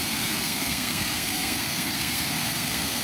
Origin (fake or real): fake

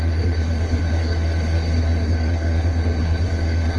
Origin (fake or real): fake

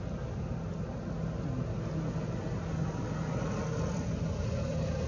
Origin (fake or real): real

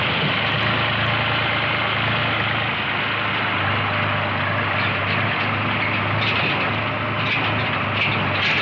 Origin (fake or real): real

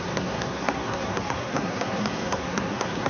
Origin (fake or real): fake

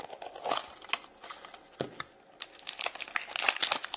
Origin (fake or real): real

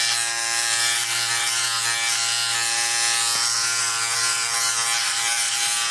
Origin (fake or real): real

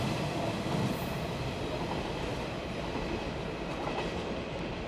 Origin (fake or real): real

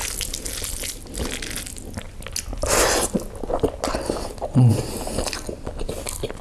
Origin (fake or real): real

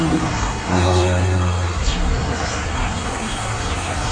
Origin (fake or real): fake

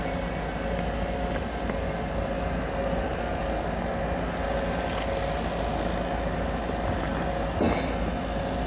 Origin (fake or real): real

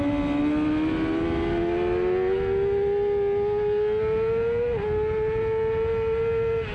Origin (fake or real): real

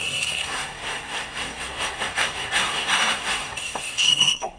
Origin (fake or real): fake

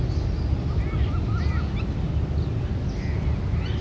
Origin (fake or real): real